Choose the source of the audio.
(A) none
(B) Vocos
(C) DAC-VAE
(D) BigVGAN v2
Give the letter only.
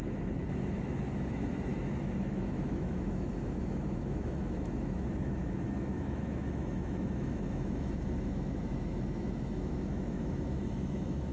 C